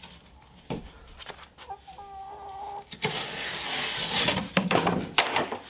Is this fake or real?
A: real